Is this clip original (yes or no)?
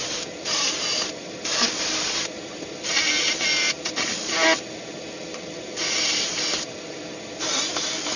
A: yes